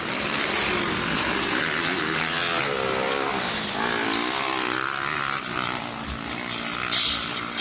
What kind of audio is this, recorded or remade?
recorded